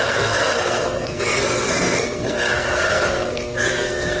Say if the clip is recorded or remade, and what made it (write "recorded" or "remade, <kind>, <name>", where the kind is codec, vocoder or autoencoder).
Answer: remade, codec, SNAC